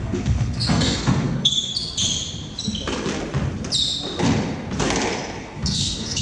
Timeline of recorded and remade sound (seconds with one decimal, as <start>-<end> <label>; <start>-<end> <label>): 0.0-1.7 remade; 1.7-5.4 recorded; 5.4-6.2 remade

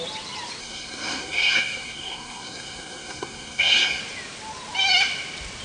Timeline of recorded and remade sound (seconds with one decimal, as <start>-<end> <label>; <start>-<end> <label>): 0.0-0.6 recorded; 0.6-4.0 remade; 4.0-5.6 recorded

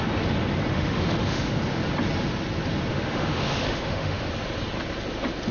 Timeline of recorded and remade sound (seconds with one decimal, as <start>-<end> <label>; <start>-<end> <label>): 0.0-0.7 recorded; 0.7-1.6 remade; 1.6-2.9 recorded; 2.9-4.3 remade; 4.3-5.5 recorded

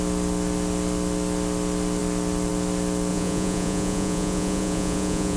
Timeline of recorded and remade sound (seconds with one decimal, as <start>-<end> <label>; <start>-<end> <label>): 0.0-3.1 recorded; 3.1-5.4 remade

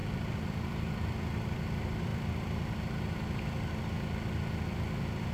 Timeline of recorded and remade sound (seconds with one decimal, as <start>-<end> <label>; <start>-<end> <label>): 0.0-0.7 recorded; 0.7-2.1 remade; 2.1-5.3 recorded

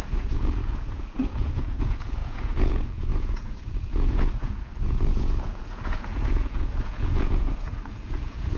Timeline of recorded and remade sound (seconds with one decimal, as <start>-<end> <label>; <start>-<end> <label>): 0.0-8.6 remade

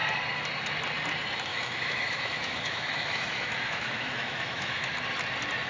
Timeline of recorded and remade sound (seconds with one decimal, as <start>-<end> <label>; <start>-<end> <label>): 0.0-1.5 recorded; 1.5-4.9 remade; 4.9-5.7 recorded